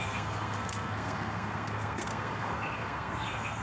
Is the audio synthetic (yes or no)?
yes